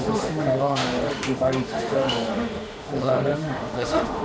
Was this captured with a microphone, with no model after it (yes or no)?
no